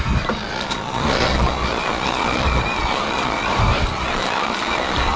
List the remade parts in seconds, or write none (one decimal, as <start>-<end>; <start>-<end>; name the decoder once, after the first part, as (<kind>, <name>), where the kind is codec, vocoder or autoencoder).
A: 0.4-3.5 (vocoder, Vocos); 3.9-5.2